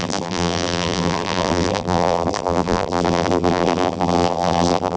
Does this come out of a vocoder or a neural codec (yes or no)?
yes